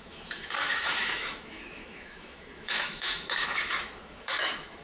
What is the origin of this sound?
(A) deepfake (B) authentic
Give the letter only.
A